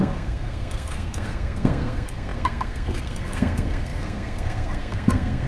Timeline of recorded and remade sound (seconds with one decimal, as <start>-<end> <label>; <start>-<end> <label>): 0.0-5.5 remade